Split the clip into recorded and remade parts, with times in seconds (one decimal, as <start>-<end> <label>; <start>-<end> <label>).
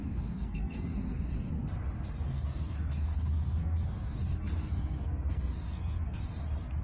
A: 0.0-1.5 remade; 1.5-2.3 recorded; 2.3-6.2 remade; 6.2-6.8 recorded